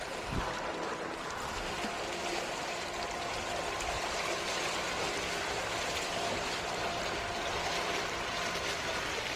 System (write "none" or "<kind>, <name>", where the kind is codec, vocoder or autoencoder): none